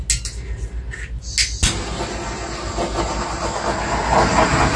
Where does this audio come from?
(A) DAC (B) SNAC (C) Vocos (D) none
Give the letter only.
D